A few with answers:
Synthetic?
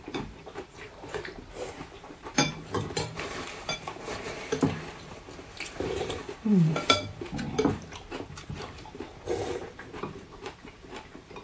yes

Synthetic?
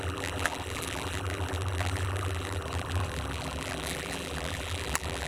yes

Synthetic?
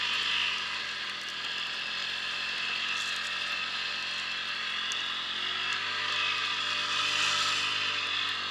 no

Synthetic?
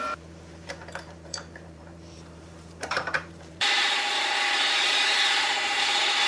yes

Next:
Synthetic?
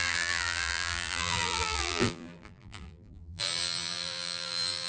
yes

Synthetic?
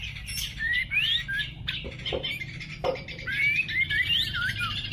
yes